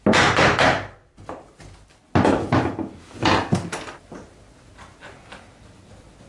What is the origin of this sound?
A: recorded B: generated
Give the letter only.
A